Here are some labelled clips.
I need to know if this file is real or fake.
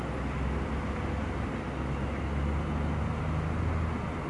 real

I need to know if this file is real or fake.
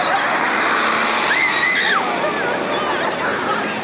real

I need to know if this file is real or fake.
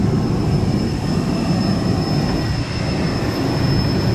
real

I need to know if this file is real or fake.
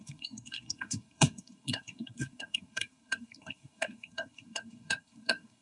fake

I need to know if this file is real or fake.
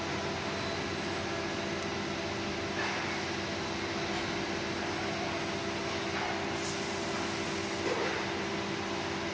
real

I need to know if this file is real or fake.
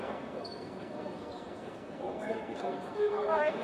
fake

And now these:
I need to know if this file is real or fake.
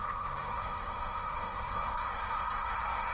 fake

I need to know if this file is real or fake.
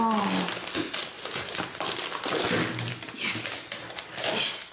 real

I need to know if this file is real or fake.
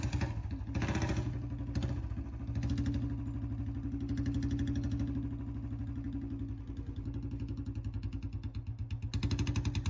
real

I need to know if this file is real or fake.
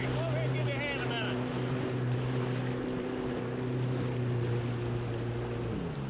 real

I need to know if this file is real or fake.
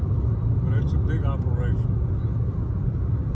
real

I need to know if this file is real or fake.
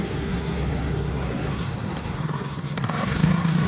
fake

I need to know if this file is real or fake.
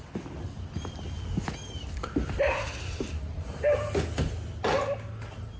real